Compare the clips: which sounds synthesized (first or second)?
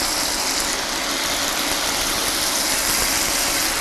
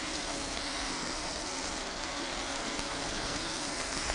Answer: second